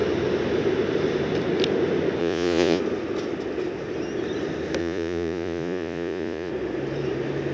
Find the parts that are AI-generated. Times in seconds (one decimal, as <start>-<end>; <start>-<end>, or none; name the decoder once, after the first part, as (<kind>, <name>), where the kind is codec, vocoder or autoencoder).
2.2-2.8 (vocoder, Vocos); 4.8-6.5

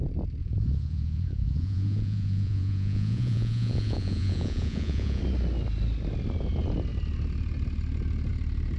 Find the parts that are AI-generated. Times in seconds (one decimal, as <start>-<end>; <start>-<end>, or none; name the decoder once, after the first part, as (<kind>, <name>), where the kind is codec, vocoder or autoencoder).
0.4-5.2 (vocoder, Vocos)

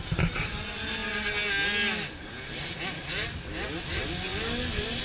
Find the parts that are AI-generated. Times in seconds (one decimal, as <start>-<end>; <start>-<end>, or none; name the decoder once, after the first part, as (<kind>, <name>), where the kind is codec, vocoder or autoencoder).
none